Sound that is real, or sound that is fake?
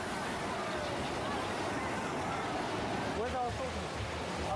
real